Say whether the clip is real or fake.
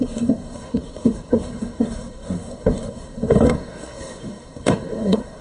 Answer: fake